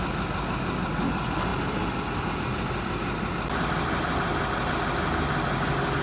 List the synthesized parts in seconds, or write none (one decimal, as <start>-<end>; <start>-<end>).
none